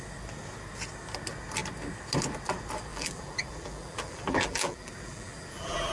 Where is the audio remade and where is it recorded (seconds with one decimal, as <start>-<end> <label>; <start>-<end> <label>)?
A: 0.0-2.9 recorded; 2.9-5.9 remade